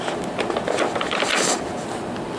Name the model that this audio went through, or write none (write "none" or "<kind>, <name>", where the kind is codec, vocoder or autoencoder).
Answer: none